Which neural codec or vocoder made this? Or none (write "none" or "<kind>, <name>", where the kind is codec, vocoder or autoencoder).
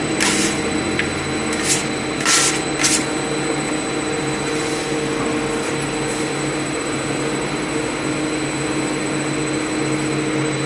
none